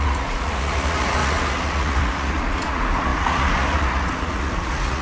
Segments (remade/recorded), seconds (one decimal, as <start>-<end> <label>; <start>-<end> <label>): 0.0-5.0 remade